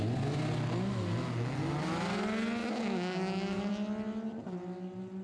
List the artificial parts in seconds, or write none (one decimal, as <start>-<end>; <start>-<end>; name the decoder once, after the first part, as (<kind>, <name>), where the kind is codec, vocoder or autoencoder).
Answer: 2.6-3.7 (codec, DAC)